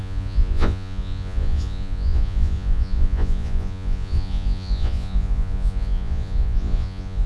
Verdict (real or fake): fake